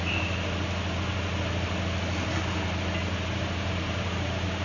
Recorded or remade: recorded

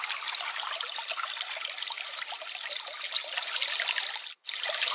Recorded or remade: recorded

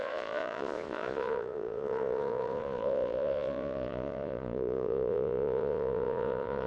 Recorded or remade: remade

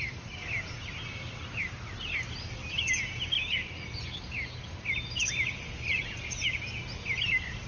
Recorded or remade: recorded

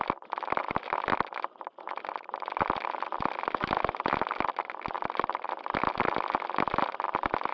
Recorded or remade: recorded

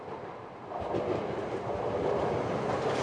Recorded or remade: recorded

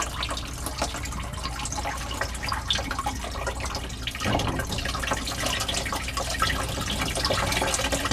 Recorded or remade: recorded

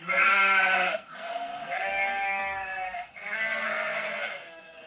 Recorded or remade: remade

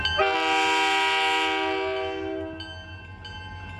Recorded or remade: recorded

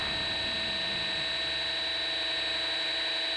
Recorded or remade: recorded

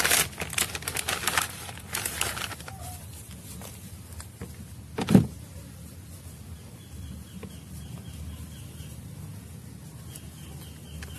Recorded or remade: recorded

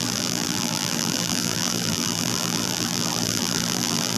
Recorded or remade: remade